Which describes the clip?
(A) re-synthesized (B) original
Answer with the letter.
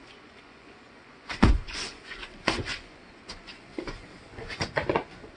A